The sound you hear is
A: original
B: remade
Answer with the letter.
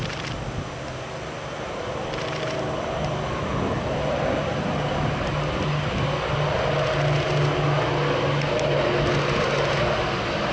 A